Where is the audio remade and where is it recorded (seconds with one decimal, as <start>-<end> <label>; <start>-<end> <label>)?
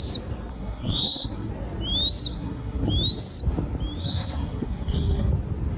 0.0-0.5 recorded; 0.5-1.5 remade; 1.5-2.3 recorded; 2.3-2.9 remade; 2.9-4.0 recorded; 4.0-5.3 remade; 5.3-5.8 recorded